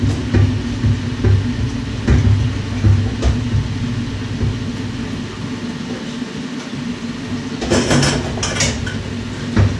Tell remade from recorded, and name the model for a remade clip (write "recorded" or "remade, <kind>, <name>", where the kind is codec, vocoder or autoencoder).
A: recorded